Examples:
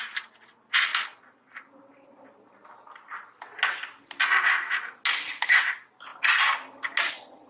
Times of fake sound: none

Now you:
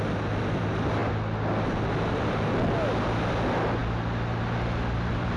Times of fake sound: none